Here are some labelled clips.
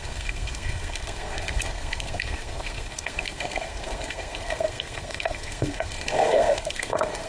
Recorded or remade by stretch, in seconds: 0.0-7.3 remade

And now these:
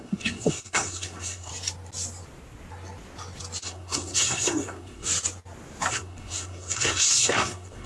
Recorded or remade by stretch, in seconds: 0.0-1.5 remade; 1.5-3.6 recorded; 3.6-5.1 remade; 5.1-5.9 recorded; 5.9-7.9 remade

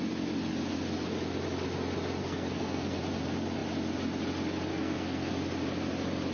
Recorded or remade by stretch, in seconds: 0.0-2.2 recorded; 2.2-3.0 remade; 3.0-4.7 recorded; 4.7-5.3 remade; 5.3-6.3 recorded

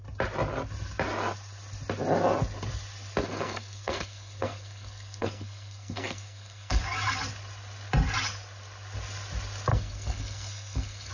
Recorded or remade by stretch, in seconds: 0.0-3.2 recorded; 3.2-6.8 remade; 6.8-9.7 recorded; 9.7-11.1 remade

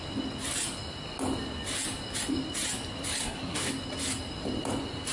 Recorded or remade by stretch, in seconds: 0.0-3.2 recorded; 3.2-3.7 remade; 3.7-5.1 recorded

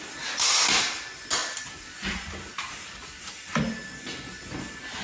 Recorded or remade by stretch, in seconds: 0.0-5.0 recorded

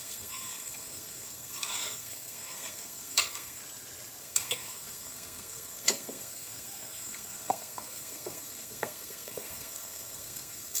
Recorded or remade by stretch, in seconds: 0.0-3.6 remade; 3.6-4.2 recorded; 4.2-10.8 remade